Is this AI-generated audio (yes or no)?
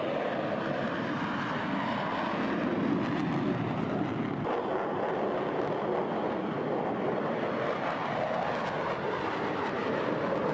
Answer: no